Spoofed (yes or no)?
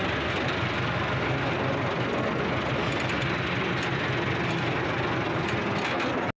no